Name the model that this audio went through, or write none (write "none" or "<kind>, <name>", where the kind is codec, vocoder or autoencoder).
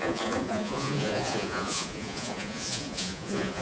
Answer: vocoder, Vocos